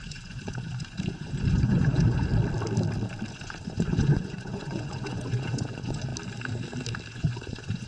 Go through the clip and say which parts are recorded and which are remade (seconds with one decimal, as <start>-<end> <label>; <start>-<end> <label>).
0.0-2.3 remade; 2.3-3.3 recorded; 3.3-6.1 remade; 6.1-7.1 recorded; 7.1-7.9 remade